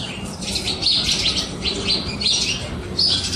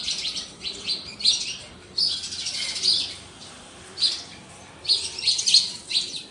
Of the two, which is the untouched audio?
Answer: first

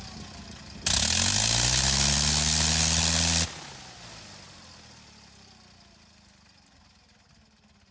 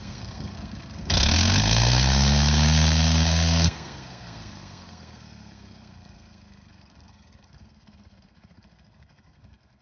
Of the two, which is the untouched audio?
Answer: first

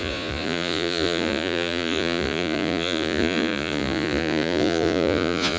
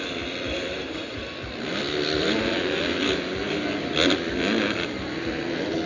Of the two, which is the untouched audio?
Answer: second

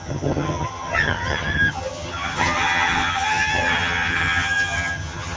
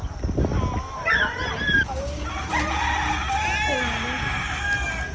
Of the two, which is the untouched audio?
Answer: second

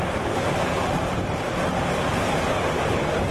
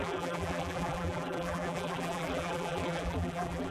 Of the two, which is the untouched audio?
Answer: first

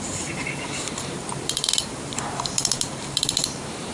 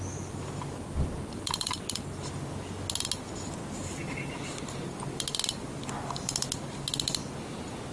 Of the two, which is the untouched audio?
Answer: second